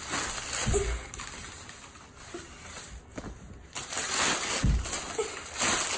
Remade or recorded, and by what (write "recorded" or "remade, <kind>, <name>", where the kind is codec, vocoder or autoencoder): recorded